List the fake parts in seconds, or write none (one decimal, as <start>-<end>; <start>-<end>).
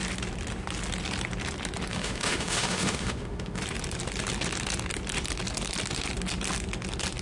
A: 1.9-3.6